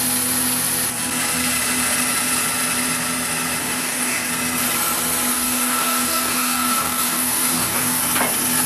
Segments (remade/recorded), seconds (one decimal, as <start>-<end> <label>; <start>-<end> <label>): 0.0-3.6 recorded; 3.6-4.3 remade; 4.3-5.3 recorded; 5.3-8.0 remade; 8.0-8.7 recorded